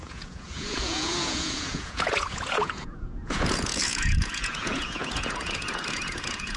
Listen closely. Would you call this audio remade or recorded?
remade